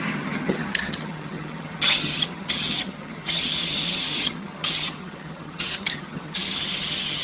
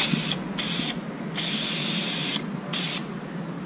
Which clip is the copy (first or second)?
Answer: first